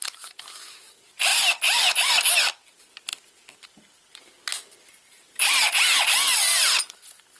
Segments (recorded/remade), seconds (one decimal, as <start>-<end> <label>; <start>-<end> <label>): 0.0-7.4 recorded